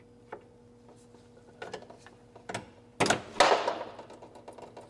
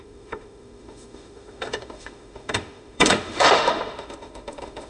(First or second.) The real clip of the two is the first